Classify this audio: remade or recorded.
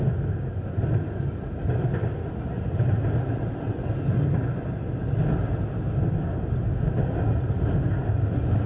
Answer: recorded